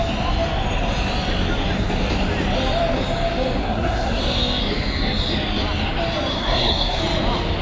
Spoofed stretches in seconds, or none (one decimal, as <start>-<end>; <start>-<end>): 3.6-4.2; 6.3-7.0